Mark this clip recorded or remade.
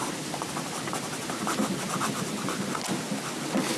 recorded